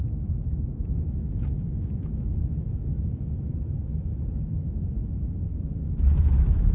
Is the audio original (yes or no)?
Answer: no